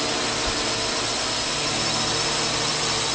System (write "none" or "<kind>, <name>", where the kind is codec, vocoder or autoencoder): none